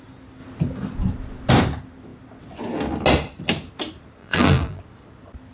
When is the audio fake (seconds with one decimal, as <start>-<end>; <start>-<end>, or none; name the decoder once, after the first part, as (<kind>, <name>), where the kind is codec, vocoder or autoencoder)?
4.2-4.8 (vocoder, BigVGAN v2)